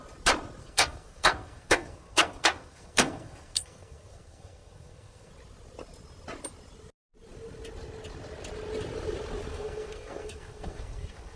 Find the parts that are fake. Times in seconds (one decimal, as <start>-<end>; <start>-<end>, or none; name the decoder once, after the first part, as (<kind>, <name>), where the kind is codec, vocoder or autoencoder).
0.6-5.3 (codec, SNAC); 9.5-11.4